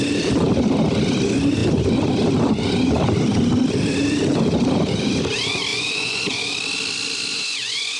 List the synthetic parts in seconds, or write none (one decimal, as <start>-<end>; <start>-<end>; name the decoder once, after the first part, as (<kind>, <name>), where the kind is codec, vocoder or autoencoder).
5.7-6.5 (vocoder, Vocos); 7.3-8.0